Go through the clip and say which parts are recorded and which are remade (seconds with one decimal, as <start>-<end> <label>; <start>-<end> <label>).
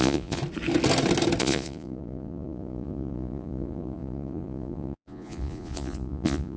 0.0-0.4 remade; 0.4-1.4 recorded; 1.4-6.6 remade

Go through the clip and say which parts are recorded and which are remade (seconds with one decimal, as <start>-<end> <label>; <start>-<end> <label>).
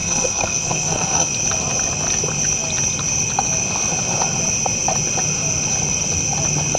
0.0-1.3 remade; 1.3-6.8 recorded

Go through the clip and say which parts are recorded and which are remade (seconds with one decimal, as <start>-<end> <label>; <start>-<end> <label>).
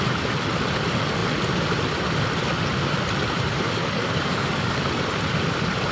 0.0-3.8 recorded; 3.8-4.8 remade; 4.8-5.9 recorded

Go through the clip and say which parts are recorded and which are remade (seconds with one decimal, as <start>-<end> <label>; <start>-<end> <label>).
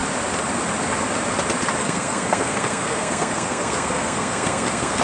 0.0-1.8 recorded; 1.8-5.0 remade